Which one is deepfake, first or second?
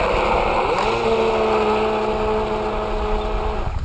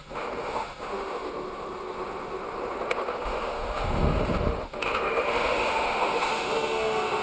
second